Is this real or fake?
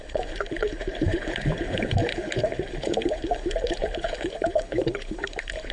fake